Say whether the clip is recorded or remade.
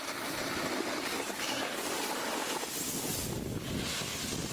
recorded